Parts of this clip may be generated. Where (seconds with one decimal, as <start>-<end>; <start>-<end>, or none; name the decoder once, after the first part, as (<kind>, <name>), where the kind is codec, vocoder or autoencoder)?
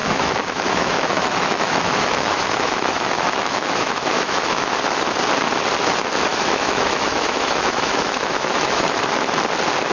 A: 0.0-4.7 (autoencoder, DAC-VAE); 6.3-9.0